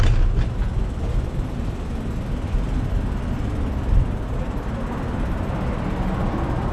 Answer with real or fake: real